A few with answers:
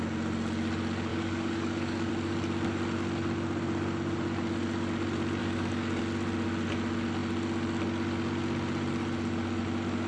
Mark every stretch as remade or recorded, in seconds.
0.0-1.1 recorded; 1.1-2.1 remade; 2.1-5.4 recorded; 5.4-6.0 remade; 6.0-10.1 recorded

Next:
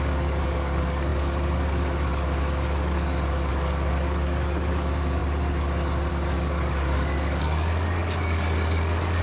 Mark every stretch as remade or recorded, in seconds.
0.0-5.2 remade; 5.2-6.1 recorded; 6.1-9.2 remade